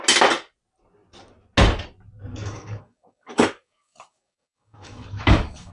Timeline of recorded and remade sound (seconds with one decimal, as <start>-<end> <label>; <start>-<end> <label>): 0.0-2.3 recorded; 2.3-5.7 remade